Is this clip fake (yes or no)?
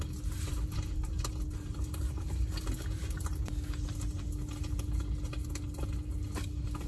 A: no